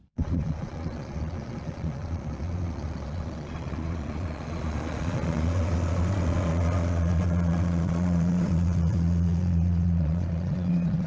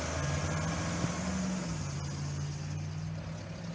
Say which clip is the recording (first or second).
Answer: second